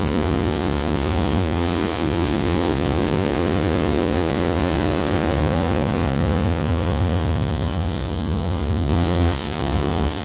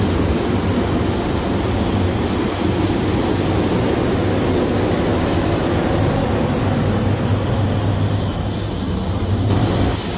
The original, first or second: second